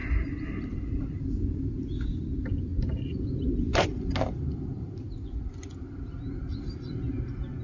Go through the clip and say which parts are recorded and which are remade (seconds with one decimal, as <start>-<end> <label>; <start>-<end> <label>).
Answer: 0.0-7.6 recorded